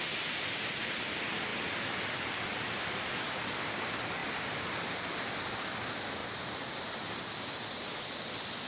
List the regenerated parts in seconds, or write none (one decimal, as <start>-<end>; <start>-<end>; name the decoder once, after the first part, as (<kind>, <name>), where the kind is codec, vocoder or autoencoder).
0.0-6.2 (vocoder, BigVGAN v2); 7.1-8.7